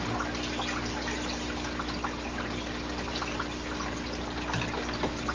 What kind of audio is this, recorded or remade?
recorded